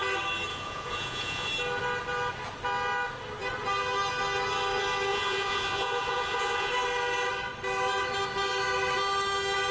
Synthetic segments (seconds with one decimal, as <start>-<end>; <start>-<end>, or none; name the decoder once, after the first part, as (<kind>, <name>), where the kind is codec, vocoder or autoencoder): 0.5-1.5 (vocoder, Vocos); 5.1-6.7